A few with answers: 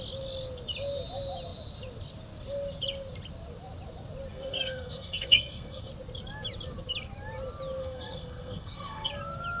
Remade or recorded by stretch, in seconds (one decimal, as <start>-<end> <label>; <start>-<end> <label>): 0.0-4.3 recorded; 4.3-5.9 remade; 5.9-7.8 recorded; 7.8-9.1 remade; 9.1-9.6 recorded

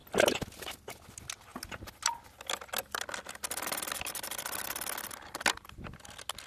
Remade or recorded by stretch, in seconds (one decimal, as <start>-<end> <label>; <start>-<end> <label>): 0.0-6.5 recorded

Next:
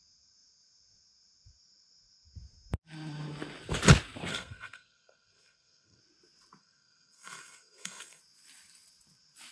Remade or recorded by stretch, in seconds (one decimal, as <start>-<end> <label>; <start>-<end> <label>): 0.0-4.3 recorded; 4.3-6.0 remade; 6.0-6.6 recorded; 6.6-8.2 remade; 8.2-9.5 recorded

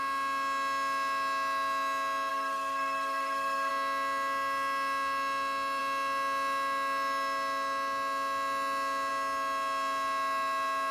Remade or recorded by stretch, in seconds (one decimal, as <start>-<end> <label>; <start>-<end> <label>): 0.0-2.3 recorded; 2.3-3.7 remade; 3.7-10.9 recorded